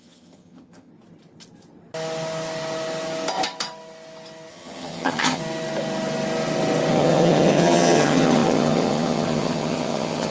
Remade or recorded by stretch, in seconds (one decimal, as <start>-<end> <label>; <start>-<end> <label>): 0.0-0.9 remade; 0.9-4.5 recorded; 4.5-5.4 remade; 5.4-6.9 recorded; 6.9-10.3 remade